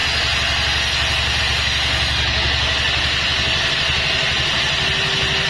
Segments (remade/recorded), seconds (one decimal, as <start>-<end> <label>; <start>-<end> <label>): 0.0-5.5 recorded